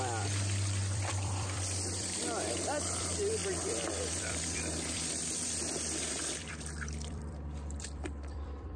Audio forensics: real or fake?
fake